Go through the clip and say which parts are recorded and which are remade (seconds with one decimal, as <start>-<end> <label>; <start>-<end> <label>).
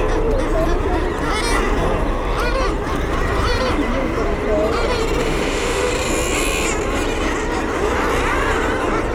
0.0-5.2 recorded; 5.2-5.9 remade; 5.9-9.1 recorded